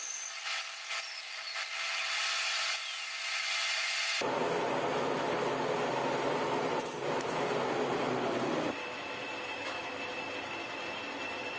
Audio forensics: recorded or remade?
recorded